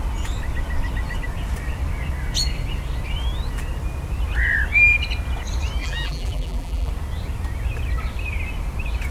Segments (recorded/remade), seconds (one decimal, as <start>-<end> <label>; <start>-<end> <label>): 0.0-5.8 recorded; 5.8-6.9 remade; 6.9-9.1 recorded